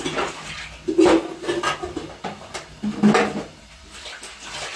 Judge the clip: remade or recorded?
recorded